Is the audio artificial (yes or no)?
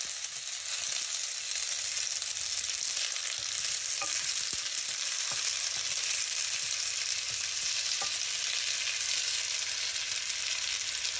no